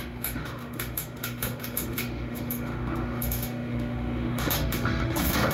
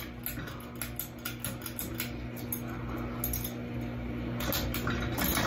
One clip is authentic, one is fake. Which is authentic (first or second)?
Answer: second